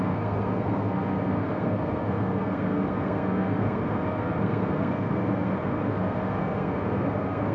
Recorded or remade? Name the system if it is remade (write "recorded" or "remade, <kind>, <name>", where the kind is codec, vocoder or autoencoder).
remade, codec, SNAC